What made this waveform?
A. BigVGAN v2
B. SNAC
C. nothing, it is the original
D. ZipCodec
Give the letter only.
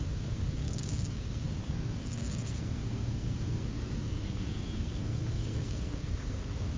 B